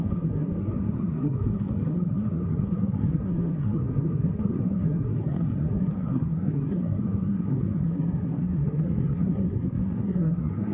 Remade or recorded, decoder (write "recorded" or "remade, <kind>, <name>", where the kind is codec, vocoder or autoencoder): remade, codec, SNAC